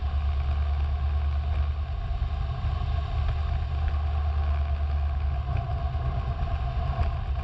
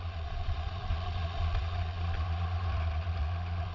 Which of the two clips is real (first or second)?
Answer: first